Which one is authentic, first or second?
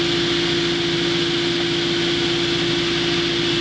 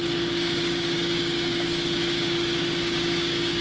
first